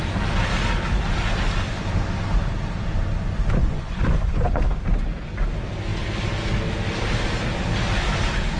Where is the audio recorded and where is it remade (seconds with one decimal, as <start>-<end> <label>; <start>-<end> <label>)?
0.0-3.6 recorded; 3.6-4.6 remade; 4.6-8.6 recorded